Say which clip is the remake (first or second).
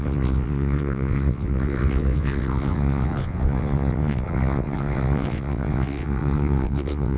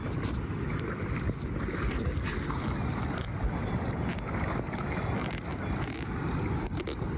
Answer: first